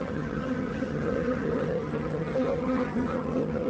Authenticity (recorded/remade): remade